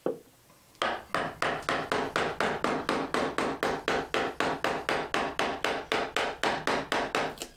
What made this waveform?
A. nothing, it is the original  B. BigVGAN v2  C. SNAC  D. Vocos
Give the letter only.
A